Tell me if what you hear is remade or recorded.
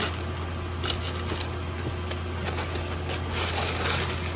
recorded